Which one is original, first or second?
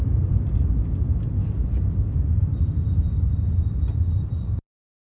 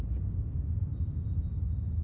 second